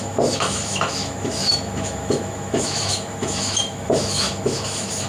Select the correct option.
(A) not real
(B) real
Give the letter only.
A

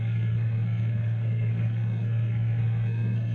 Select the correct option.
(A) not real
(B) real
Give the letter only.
A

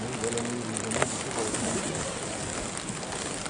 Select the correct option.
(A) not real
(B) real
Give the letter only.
B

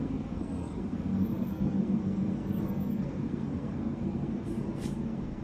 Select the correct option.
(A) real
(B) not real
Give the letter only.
B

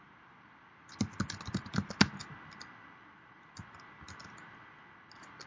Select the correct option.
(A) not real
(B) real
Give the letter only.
B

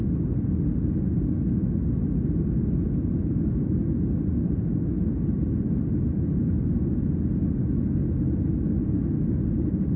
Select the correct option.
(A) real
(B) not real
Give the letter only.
A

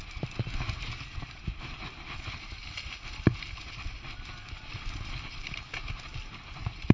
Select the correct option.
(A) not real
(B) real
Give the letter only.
B